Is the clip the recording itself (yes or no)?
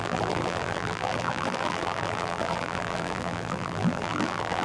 no